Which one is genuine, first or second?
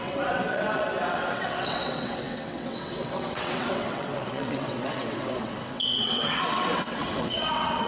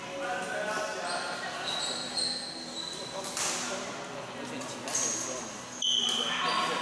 second